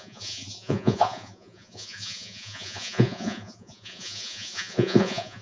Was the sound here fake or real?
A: fake